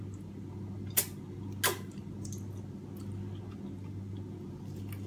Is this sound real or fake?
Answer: real